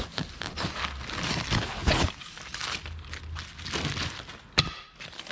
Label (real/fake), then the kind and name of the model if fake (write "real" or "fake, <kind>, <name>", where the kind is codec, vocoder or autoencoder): real